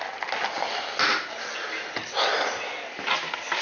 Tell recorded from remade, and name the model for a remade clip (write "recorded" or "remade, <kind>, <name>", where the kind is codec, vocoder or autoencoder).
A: recorded